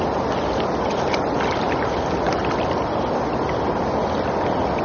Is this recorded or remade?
recorded